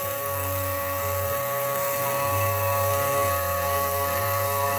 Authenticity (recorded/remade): remade